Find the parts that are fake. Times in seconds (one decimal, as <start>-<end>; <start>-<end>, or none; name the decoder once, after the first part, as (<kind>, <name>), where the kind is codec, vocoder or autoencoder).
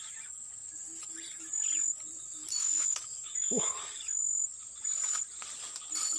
2.4-4.2 (autoencoder, DAC-VAE)